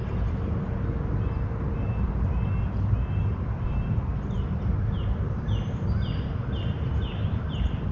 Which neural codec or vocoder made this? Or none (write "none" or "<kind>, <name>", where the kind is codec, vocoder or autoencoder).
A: none